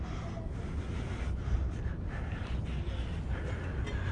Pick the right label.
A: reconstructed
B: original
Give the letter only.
B